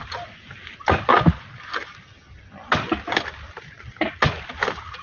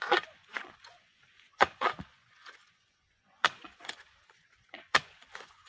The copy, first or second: second